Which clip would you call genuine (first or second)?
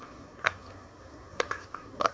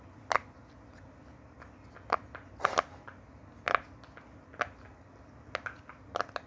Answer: second